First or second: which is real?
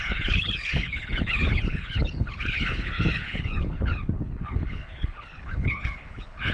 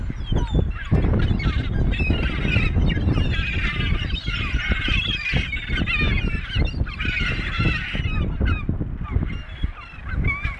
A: second